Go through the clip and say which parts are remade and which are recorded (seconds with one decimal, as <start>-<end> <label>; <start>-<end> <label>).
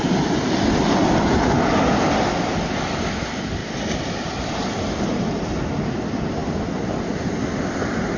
0.0-1.0 recorded; 1.0-2.3 remade; 2.3-6.4 recorded; 6.4-6.9 remade; 6.9-8.2 recorded